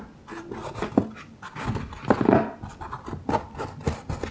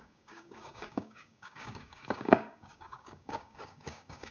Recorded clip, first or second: first